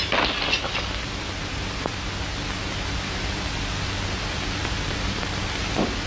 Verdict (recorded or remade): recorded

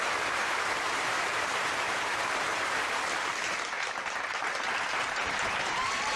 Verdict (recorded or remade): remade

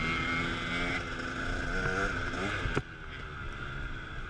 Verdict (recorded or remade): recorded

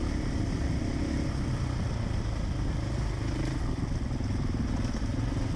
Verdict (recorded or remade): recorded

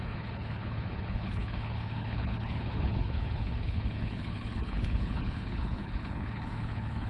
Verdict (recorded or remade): remade